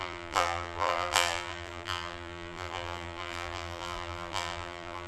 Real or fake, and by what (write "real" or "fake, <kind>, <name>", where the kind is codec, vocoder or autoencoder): fake, vocoder, BigVGAN v2